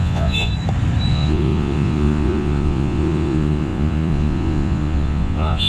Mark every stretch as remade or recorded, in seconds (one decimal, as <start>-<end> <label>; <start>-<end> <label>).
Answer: 0.0-0.5 remade; 0.5-1.1 recorded; 1.1-5.7 remade

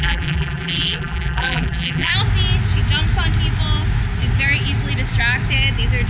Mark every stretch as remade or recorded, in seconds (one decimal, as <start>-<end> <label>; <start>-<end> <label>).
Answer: 0.0-2.1 remade; 2.1-6.1 recorded

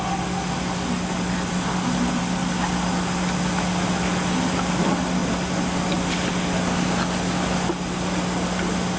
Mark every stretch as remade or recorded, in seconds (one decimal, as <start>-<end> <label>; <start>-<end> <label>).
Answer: 0.0-9.0 recorded

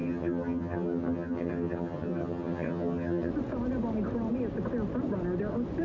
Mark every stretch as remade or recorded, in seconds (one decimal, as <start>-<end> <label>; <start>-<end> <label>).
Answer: 0.0-3.3 remade; 3.3-5.8 recorded

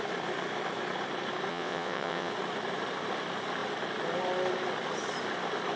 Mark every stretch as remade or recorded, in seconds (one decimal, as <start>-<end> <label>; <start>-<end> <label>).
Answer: 0.0-1.5 recorded; 1.5-2.3 remade; 2.3-5.8 recorded